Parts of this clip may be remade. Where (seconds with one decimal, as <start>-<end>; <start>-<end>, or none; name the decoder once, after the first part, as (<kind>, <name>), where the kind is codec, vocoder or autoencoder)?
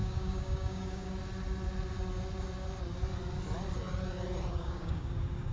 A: 0.0-1.2 (codec, DAC); 4.5-5.5